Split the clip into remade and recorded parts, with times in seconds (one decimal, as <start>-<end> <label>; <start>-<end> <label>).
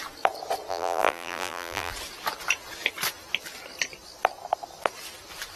0.0-0.7 recorded; 0.7-1.9 remade; 1.9-5.6 recorded